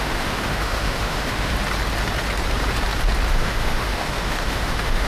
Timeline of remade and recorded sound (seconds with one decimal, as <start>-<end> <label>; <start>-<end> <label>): 0.0-1.5 remade; 1.5-3.3 recorded; 3.3-5.1 remade